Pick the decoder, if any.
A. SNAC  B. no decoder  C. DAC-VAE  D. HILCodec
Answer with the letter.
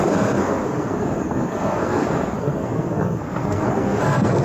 A